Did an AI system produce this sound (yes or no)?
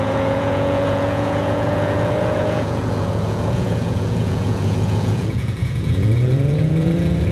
yes